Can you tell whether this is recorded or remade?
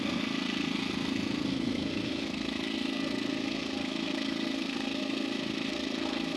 remade